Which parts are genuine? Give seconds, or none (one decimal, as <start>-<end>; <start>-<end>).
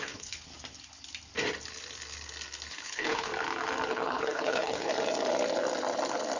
0.5-2.7; 3.3-3.9; 4.9-6.4